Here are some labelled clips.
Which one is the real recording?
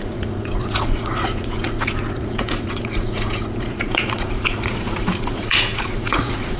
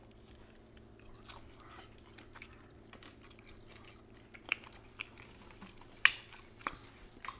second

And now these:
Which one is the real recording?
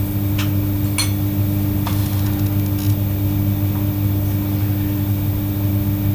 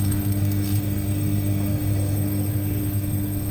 first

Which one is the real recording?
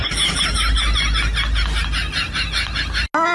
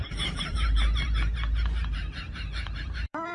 first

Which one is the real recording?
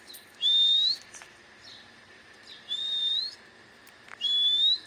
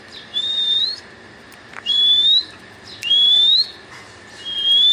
first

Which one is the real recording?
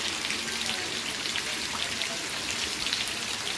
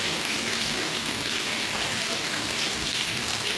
first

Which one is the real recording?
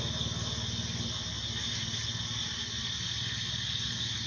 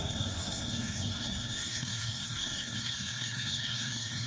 first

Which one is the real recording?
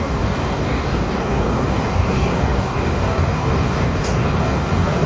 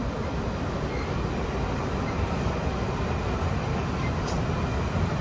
second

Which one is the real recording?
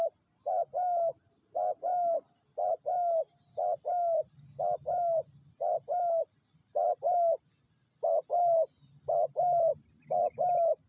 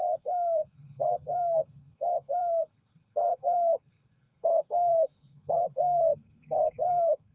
first